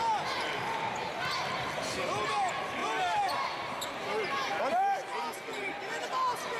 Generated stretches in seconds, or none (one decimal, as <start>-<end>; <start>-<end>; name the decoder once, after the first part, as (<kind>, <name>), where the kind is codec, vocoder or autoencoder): none